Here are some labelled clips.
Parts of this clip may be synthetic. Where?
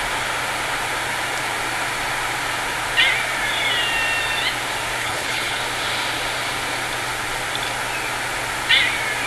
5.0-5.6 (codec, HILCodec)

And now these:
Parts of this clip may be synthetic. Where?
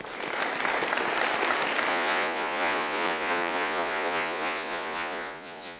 1.9-5.8 (vocoder, Vocos)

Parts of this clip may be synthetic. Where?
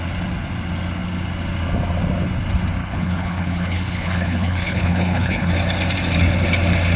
2.8-5.5 (codec, HILCodec)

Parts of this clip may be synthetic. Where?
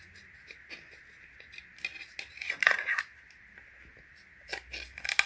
none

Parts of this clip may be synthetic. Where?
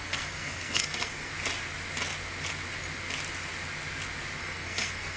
0.0-1.3 (codec, SNAC); 4.4-5.2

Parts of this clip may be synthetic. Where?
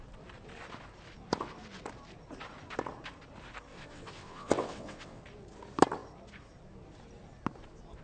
3.7-5.2 (vocoder, WaveNeXt)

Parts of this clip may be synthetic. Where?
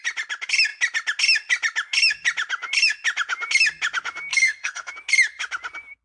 4.3-4.9 (codec, SNAC)